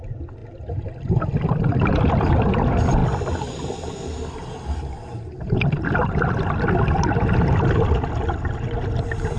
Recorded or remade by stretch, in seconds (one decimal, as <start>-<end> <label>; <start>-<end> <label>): 0.0-9.4 recorded